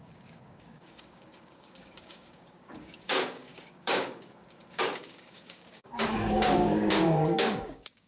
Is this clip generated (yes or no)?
yes